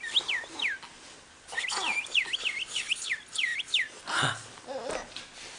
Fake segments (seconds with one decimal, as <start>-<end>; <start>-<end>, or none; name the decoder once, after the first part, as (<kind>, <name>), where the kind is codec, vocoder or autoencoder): none